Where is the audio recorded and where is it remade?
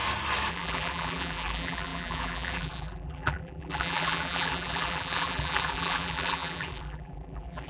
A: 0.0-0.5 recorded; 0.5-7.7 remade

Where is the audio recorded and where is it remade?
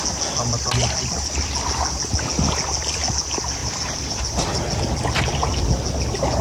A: 0.0-3.6 recorded; 3.6-4.8 remade; 4.8-6.4 recorded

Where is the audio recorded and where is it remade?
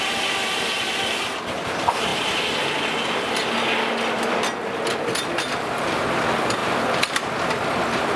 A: 0.0-6.6 recorded; 6.6-7.3 remade; 7.3-8.2 recorded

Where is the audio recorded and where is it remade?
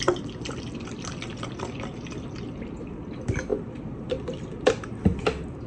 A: 0.0-5.7 recorded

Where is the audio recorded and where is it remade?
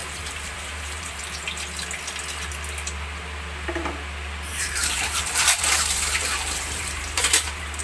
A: 0.0-1.2 remade; 1.2-4.5 recorded; 4.5-7.8 remade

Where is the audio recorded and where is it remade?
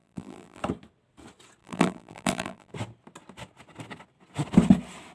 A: 0.0-0.6 remade; 0.6-1.6 recorded; 1.6-2.7 remade; 2.7-5.1 recorded